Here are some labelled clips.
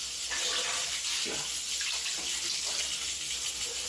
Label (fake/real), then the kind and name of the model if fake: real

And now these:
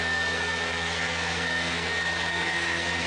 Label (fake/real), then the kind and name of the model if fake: fake, codec, SNAC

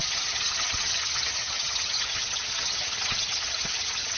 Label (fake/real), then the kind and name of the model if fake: fake, vocoder, HiFi-GAN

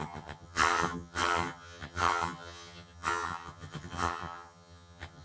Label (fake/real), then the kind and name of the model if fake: fake, vocoder, HiFi-GAN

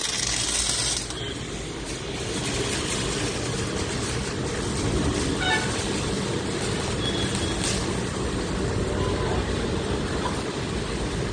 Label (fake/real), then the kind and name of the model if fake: real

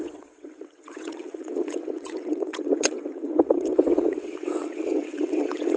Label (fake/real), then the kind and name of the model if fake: fake, vocoder, WaveNeXt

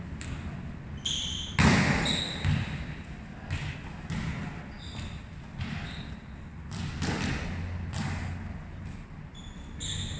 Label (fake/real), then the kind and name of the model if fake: real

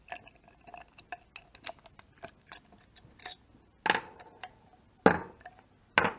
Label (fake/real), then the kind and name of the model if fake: real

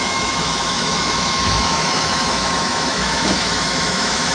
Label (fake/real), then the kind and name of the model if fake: fake, autoencoder, DAC-VAE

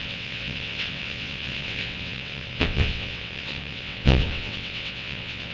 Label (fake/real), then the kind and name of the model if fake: fake, vocoder, WaveNeXt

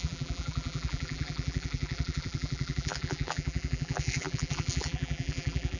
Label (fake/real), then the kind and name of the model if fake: fake, vocoder, BigVGAN v2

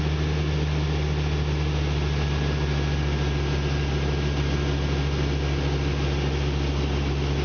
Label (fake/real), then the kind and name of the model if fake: real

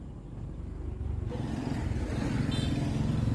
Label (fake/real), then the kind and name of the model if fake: real